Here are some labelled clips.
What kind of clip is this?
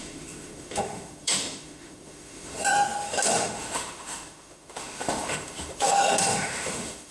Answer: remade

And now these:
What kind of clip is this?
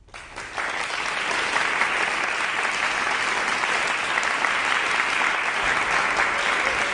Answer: recorded